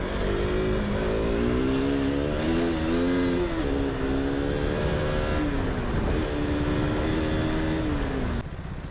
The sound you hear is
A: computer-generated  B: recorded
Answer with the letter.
B